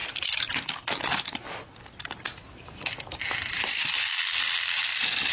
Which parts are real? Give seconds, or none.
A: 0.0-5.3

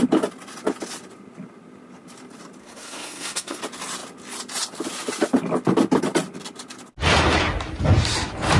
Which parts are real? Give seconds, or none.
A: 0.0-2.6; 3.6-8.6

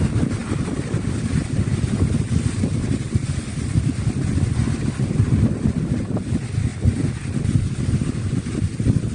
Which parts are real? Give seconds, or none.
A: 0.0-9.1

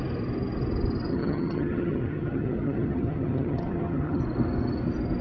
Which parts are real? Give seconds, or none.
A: 0.0-1.1; 4.2-5.2